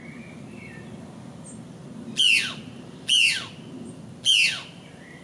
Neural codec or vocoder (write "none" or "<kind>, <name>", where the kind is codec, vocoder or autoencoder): none